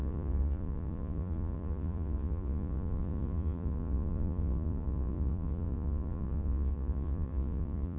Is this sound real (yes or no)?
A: no